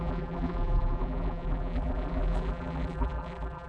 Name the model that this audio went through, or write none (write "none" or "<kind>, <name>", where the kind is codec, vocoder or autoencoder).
vocoder, BigVGAN v2